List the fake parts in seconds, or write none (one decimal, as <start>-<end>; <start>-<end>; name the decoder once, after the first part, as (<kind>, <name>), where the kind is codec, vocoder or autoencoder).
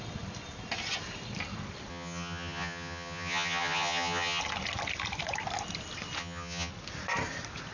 1.9-4.4 (vocoder, HiFi-GAN); 6.2-6.7